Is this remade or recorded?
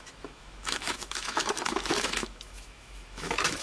remade